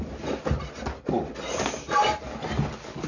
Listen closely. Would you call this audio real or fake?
real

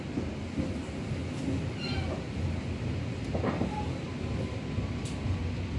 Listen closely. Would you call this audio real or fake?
real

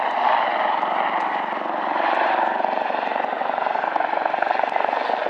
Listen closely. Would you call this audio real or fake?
fake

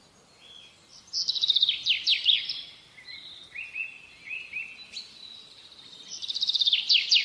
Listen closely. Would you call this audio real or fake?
real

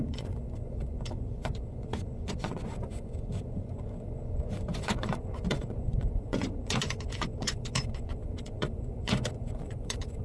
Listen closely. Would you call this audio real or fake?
fake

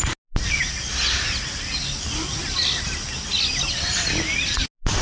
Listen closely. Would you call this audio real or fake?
real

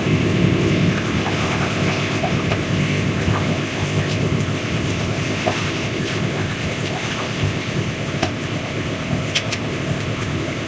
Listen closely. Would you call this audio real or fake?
fake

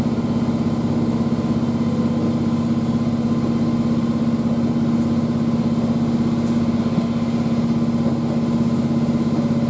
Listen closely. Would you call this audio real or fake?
real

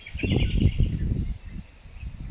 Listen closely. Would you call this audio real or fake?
fake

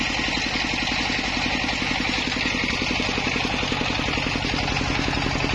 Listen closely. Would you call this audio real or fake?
real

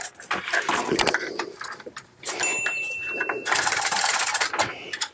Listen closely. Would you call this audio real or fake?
fake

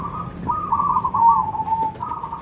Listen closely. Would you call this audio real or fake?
real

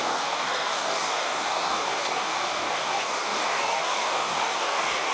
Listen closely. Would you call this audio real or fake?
fake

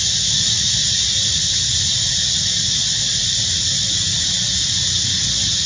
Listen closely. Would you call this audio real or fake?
real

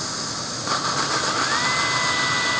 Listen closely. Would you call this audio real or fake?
real